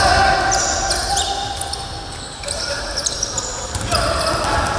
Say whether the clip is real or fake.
real